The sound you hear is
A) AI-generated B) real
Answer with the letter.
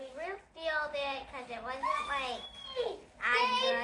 B